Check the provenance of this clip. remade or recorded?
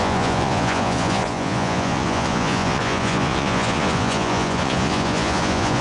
remade